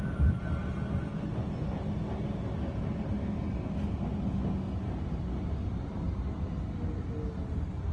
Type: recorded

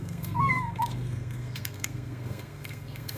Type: remade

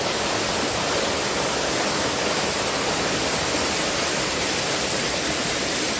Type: recorded